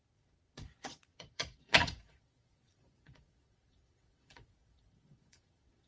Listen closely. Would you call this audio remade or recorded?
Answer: remade